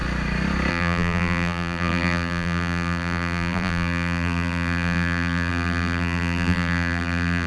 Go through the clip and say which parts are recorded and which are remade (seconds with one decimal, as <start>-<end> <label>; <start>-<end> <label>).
0.0-0.7 recorded; 0.7-7.5 remade